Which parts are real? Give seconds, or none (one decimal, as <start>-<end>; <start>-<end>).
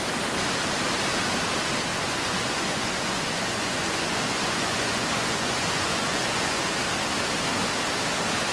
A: 0.0-1.9; 6.7-8.5